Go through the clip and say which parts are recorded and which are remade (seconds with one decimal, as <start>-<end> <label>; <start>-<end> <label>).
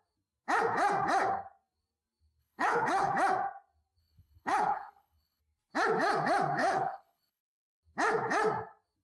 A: 0.0-2.4 recorded; 2.4-3.1 remade; 3.1-4.0 recorded; 4.0-5.4 remade; 5.4-6.6 recorded; 6.6-7.4 remade; 7.4-9.0 recorded